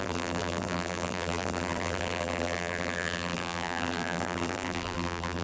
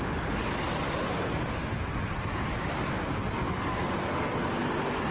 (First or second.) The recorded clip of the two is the second